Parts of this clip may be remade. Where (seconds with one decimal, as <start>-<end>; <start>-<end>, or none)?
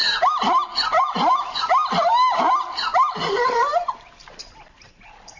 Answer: 2.9-3.6